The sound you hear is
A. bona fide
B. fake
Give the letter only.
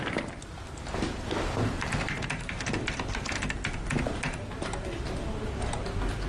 A